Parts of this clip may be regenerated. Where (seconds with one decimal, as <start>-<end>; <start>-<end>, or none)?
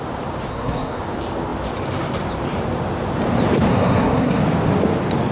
0.5-1.0; 3.7-4.4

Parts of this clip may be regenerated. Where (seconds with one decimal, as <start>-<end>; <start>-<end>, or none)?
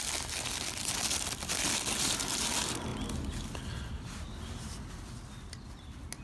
none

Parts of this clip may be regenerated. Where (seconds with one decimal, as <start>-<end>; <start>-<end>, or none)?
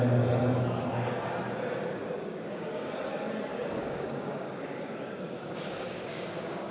2.0-2.9; 3.5-6.7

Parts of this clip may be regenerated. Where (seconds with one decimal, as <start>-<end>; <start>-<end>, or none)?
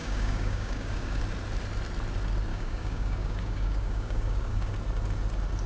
0.0-1.2; 2.5-4.7